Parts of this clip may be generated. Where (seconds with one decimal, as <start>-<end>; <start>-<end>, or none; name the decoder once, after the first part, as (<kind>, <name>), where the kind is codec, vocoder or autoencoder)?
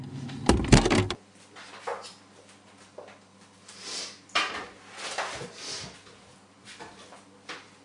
none